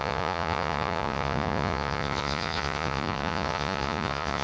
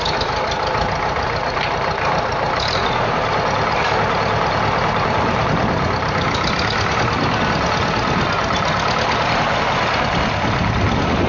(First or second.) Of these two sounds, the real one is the second